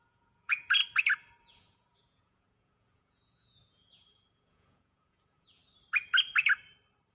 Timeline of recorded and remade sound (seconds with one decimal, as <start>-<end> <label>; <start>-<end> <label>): 0.0-0.8 remade; 0.8-1.4 recorded; 1.4-5.6 remade; 5.6-7.1 recorded